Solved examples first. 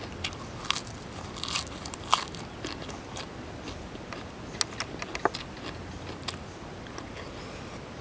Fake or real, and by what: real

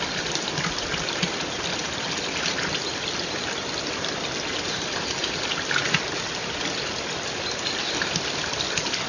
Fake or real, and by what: real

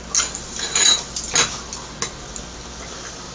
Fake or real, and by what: real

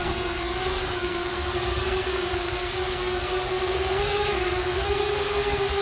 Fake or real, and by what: fake, codec, SNAC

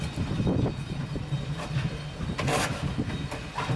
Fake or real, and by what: real